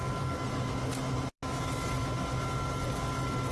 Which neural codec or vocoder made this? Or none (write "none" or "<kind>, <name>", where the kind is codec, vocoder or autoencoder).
none